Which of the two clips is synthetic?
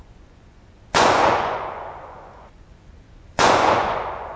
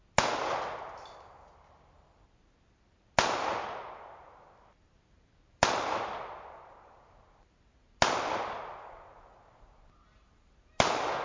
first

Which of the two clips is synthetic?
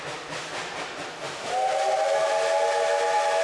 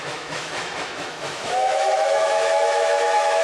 second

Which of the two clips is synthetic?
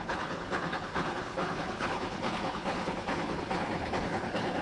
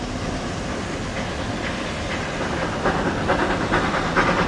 first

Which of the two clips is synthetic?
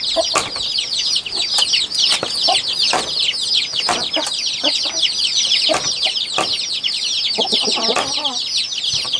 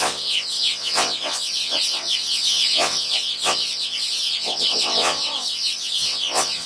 second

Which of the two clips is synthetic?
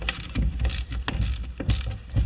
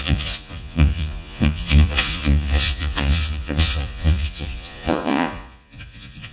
second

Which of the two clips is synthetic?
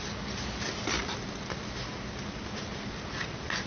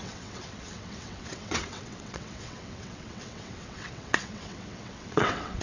second